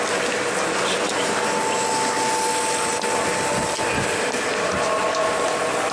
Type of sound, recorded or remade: recorded